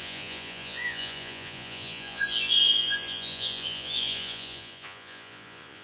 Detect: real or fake fake